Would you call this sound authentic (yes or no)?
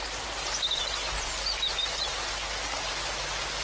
yes